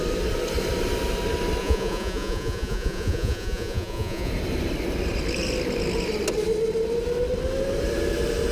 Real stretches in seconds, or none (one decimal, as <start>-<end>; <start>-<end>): 0.0-1.6; 4.3-8.5